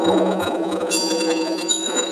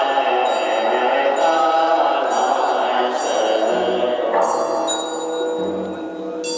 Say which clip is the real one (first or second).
second